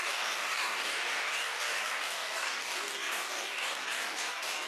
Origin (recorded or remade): remade